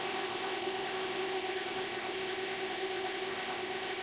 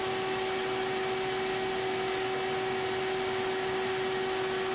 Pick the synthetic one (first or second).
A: first